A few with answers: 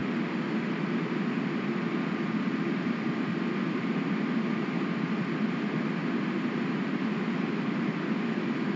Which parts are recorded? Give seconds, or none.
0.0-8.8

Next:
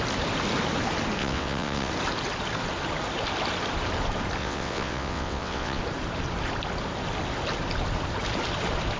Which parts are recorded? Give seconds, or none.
0.0-1.2; 1.9-4.4; 5.8-9.0